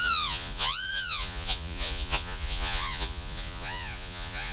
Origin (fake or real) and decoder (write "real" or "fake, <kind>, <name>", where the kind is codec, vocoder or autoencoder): fake, vocoder, Vocos